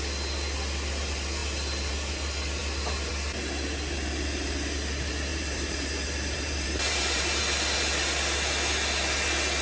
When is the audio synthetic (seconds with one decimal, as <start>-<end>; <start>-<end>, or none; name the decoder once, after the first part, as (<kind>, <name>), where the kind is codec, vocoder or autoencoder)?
5.3-7.4 (vocoder, BigVGAN v2)